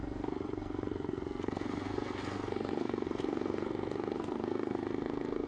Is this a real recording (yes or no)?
no